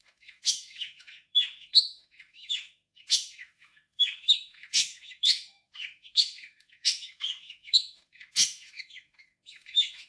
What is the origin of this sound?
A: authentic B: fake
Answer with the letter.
B